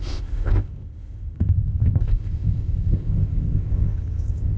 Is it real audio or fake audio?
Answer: fake